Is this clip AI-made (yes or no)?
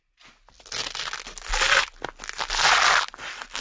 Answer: no